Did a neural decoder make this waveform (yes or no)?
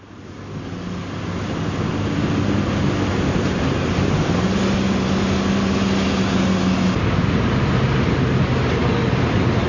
no